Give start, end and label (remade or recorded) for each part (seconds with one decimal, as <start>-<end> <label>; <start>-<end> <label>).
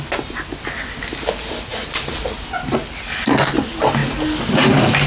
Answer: 0.0-5.1 recorded